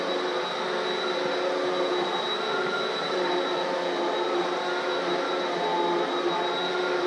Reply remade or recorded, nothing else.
recorded